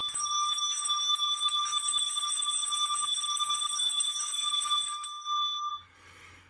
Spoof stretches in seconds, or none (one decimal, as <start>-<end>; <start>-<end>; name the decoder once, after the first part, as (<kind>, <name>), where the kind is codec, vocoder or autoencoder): 0.0-6.5 (codec, DAC)